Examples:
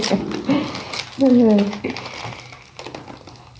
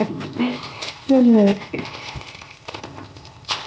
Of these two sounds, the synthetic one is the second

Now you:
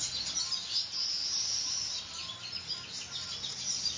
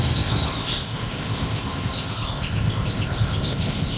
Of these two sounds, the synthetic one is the second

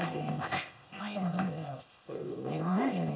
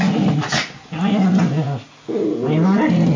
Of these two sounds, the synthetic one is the first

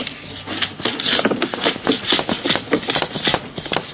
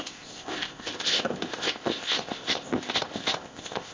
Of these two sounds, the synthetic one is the second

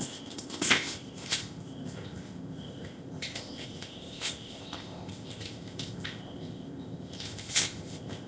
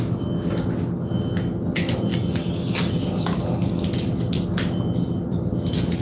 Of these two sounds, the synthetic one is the first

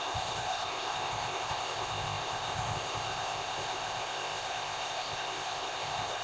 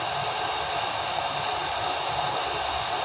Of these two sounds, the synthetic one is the first